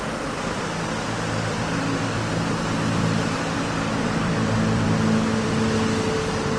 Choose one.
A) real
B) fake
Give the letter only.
B